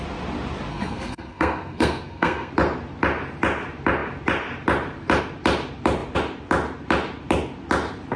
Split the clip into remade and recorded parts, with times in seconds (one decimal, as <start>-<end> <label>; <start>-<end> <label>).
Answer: 0.0-0.7 recorded; 0.7-2.5 remade; 2.5-8.2 recorded